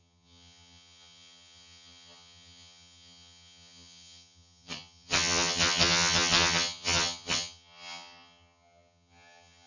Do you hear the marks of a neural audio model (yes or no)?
yes